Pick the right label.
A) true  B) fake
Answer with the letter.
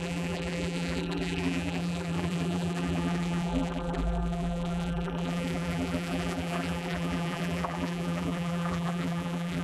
B